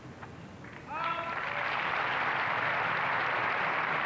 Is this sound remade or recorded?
recorded